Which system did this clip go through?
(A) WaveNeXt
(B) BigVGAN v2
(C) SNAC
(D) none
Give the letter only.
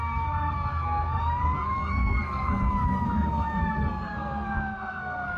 C